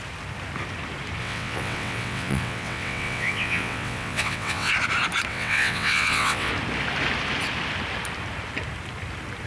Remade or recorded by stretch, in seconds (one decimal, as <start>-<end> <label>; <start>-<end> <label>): 0.0-1.2 recorded; 1.2-4.7 remade; 4.7-5.3 recorded; 5.3-6.5 remade; 6.5-9.5 recorded